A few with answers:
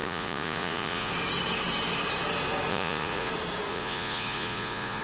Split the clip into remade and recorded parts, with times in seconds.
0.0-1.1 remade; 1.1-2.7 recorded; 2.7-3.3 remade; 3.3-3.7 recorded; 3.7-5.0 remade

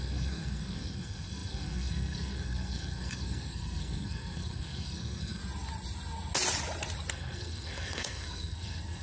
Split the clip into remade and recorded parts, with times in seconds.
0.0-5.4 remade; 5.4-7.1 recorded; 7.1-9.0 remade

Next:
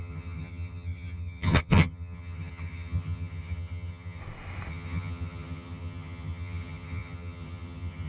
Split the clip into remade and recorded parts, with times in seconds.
0.0-4.2 remade; 4.2-4.7 recorded; 4.7-8.1 remade

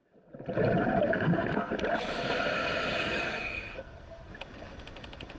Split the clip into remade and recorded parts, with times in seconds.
0.0-1.1 recorded; 1.1-1.7 remade; 1.7-3.0 recorded; 3.0-4.3 remade; 4.3-5.4 recorded

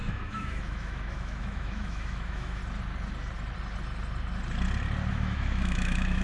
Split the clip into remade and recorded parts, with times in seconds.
0.0-2.6 remade; 2.6-5.1 recorded; 5.1-6.2 remade

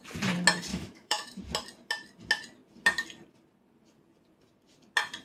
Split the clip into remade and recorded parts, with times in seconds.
0.0-0.7 recorded; 0.7-1.4 remade; 1.4-5.2 recorded

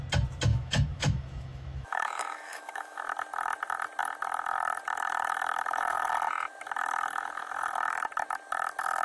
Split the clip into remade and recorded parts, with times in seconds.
0.0-0.5 recorded; 0.5-3.0 remade; 3.0-9.0 recorded